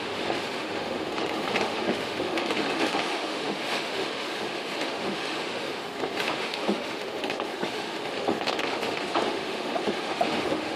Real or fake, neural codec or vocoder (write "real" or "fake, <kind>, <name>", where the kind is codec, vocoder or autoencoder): fake, autoencoder, DAC-VAE